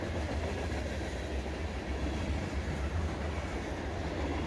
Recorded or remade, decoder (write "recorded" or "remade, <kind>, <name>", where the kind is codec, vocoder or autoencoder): recorded